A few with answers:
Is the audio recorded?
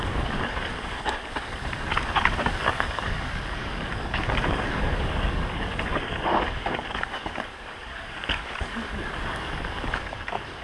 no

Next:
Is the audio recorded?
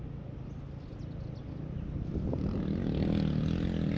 yes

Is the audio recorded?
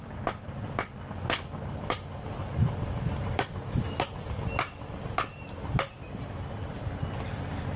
yes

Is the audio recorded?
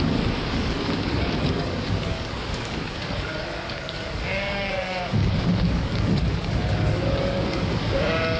no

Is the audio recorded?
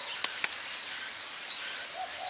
yes